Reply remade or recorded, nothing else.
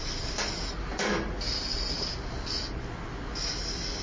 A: recorded